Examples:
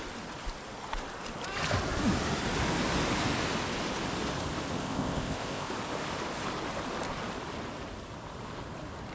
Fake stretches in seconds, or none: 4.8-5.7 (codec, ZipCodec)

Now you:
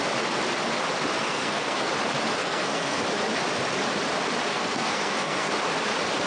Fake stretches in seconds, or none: 1.1-1.9 (codec, SNAC); 2.4-3.0; 4.5-5.5

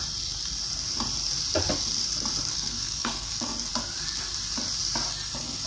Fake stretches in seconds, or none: 2.5-3.3 (codec, SNAC)

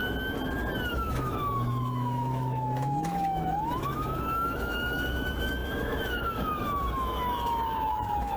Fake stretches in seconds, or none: 0.9-8.4 (autoencoder, DAC-VAE)

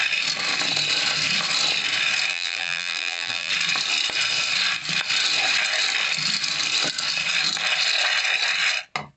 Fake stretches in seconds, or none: 2.3-3.5 (vocoder, BigVGAN v2)

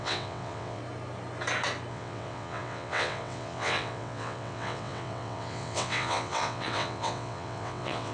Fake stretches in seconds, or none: 0.0-0.8 (vocoder, WaveNeXt); 1.9-8.1

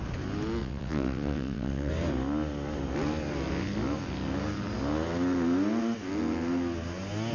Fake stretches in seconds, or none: 0.6-1.9 (vocoder, WaveNeXt)